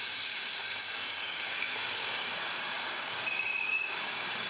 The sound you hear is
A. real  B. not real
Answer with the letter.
B